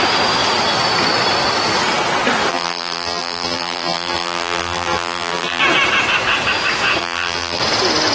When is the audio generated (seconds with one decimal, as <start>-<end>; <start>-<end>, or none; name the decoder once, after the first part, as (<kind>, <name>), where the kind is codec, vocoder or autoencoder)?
2.5-5.6 (vocoder, BigVGAN v2); 7.0-7.6